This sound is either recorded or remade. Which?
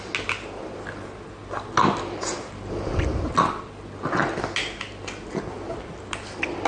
recorded